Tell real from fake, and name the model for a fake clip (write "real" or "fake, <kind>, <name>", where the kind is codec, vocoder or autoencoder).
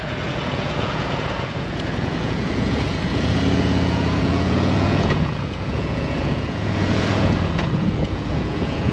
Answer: fake, vocoder, Vocos